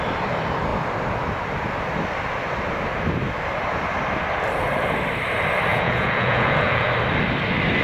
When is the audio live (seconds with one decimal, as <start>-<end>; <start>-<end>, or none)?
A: 0.0-5.7; 6.9-7.8